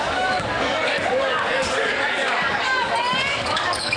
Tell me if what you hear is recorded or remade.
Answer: remade